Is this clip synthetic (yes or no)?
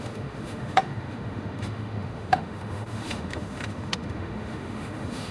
yes